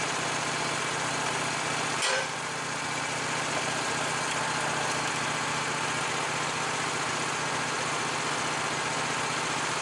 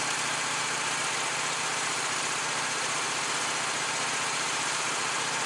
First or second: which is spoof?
second